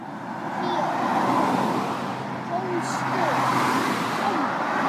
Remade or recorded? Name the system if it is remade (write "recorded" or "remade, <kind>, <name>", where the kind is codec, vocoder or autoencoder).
recorded